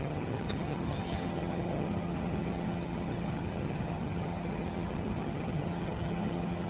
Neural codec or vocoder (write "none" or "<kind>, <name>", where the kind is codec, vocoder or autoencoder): vocoder, HiFi-GAN